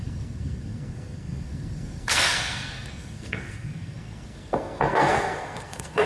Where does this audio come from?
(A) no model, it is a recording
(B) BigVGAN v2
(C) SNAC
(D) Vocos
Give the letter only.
C